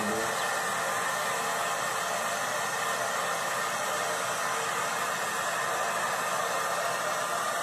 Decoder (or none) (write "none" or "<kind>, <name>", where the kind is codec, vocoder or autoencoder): none